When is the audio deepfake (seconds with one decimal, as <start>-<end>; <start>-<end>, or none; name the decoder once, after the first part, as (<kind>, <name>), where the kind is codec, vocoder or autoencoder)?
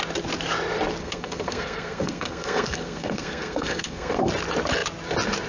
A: 1.0-4.3 (codec, SNAC)